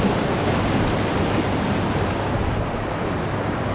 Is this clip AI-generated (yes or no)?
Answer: no